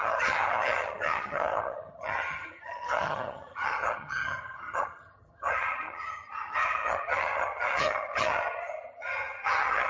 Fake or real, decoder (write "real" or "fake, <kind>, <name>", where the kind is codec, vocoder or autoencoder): fake, vocoder, HiFi-GAN